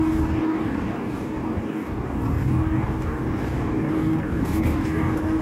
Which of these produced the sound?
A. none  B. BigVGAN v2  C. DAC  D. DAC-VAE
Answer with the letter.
C